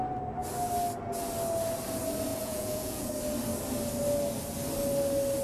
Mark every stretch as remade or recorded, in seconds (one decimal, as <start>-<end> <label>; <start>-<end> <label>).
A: 0.0-2.3 recorded; 2.3-3.1 remade; 3.1-5.4 recorded